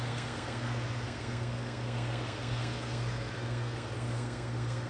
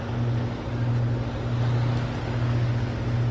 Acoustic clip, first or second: second